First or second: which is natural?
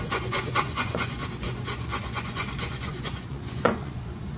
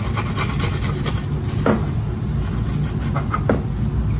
second